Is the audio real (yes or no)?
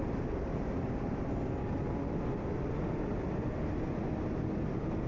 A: yes